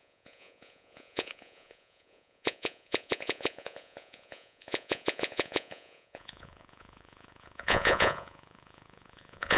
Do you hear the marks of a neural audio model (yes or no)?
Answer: yes